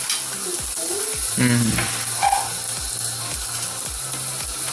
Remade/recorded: recorded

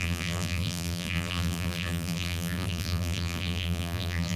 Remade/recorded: remade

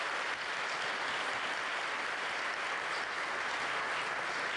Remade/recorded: recorded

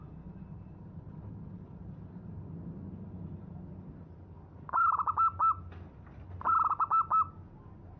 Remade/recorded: recorded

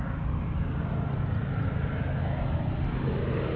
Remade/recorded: recorded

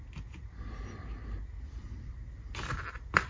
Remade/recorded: recorded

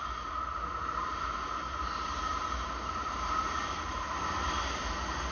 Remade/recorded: remade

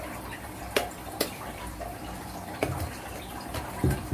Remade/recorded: remade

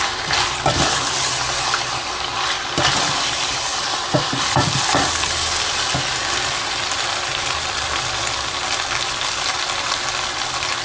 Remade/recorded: remade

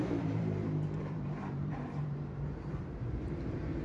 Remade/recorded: remade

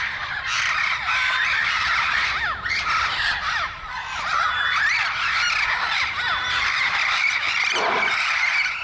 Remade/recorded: remade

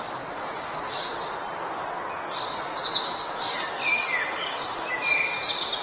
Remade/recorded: recorded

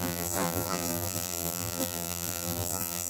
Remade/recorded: remade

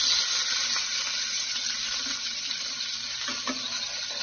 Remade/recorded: recorded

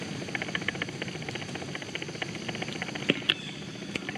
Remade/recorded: recorded